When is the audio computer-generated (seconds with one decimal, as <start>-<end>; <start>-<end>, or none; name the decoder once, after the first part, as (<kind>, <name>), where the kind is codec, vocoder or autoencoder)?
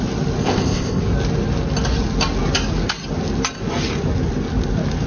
0.4-1.0 (codec, ZipCodec)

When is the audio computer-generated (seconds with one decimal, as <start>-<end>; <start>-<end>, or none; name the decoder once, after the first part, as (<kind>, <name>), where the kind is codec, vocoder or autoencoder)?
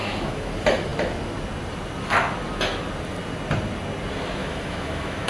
0.0-0.5 (autoencoder, DAC-VAE); 4.4-5.3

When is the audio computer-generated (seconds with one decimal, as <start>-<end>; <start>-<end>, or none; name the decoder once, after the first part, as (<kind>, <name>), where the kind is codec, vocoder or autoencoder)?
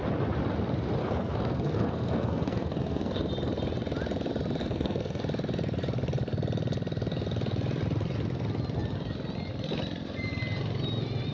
1.0-3.3 (codec, SNAC); 4.6-5.2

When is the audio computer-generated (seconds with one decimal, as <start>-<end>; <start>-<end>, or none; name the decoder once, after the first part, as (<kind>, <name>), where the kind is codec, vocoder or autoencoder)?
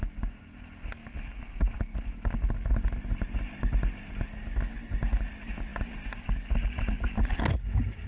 none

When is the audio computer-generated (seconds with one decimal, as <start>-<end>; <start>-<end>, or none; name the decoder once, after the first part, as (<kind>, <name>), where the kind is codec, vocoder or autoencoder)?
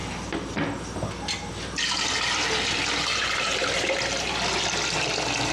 none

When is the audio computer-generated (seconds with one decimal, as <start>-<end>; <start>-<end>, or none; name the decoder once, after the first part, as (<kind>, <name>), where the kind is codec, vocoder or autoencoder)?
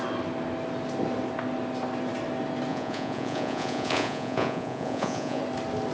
2.7-5.4 (vocoder, Vocos)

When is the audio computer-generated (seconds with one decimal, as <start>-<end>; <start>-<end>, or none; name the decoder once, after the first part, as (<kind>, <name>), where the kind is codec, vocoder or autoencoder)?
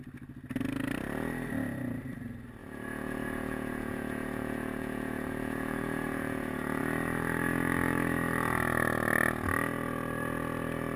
2.6-6.8 (vocoder, Vocos)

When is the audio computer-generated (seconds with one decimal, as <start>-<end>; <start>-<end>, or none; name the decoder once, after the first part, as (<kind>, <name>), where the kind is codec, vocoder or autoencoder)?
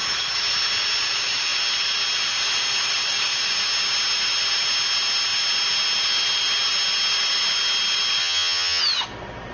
8.2-8.8 (vocoder, HiFi-GAN)